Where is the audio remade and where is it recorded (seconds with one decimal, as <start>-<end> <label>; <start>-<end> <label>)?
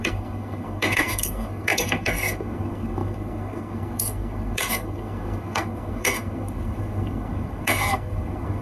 0.0-8.6 remade